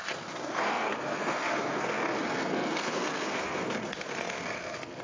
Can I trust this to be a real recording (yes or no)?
no